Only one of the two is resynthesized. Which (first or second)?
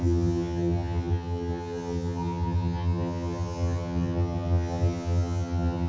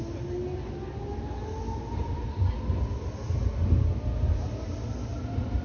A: first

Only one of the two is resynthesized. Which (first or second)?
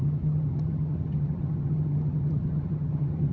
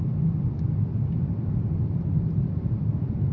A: first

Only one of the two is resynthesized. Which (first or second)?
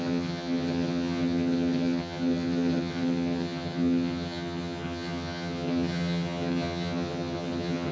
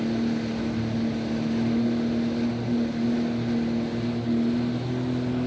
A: first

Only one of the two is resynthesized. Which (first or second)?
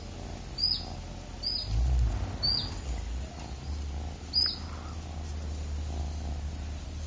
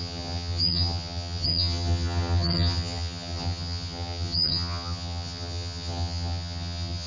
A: second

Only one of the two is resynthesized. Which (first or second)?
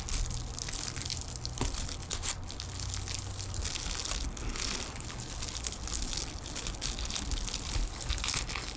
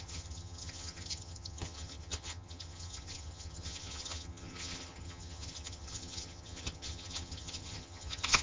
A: second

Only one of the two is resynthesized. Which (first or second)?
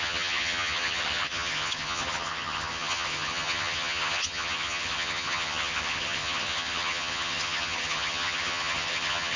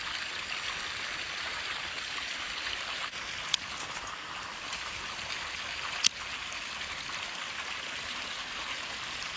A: first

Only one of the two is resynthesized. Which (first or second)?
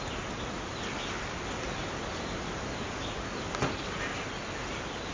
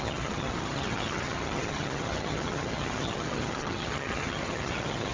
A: second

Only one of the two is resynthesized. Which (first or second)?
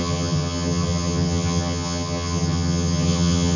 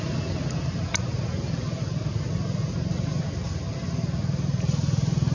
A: first